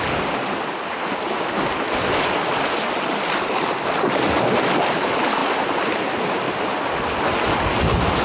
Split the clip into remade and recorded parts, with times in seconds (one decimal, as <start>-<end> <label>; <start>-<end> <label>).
0.0-8.2 recorded